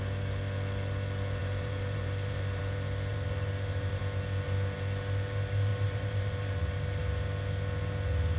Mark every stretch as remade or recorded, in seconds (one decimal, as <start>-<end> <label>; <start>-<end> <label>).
0.0-1.4 recorded; 1.4-2.6 remade; 2.6-3.1 recorded; 3.1-4.0 remade; 4.0-5.7 recorded; 5.7-7.0 remade; 7.0-8.4 recorded